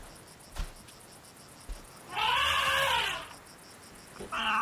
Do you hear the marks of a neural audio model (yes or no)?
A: no